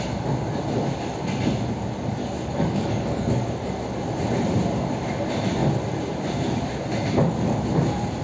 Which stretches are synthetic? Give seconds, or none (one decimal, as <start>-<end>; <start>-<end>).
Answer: 2.2-3.7